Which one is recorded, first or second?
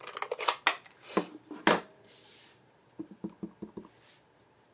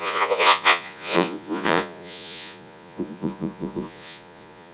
first